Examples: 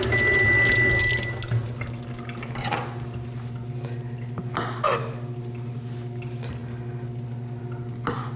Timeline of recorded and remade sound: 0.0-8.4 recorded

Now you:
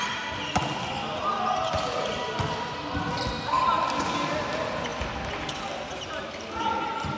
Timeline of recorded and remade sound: 0.0-7.2 recorded

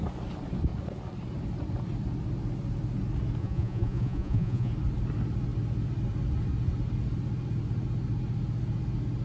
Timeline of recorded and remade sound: 0.0-3.4 recorded; 3.4-4.7 remade; 4.7-9.2 recorded

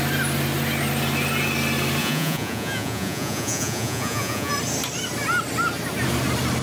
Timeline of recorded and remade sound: 0.0-2.0 recorded; 2.0-4.5 remade; 4.5-6.6 recorded

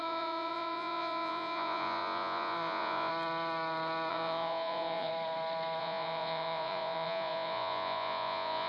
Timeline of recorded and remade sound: 0.0-3.1 remade; 3.1-4.1 recorded; 4.1-5.1 remade; 5.1-5.8 recorded; 5.8-8.7 remade